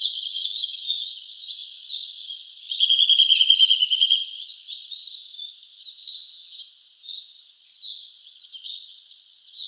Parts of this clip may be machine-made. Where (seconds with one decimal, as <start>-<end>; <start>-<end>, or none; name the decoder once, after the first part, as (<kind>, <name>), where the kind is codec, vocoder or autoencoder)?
0.0-5.0 (vocoder, Vocos); 7.6-9.7